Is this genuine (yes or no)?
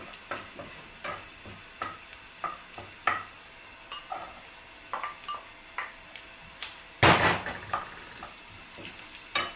yes